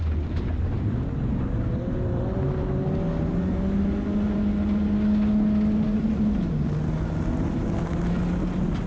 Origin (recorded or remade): recorded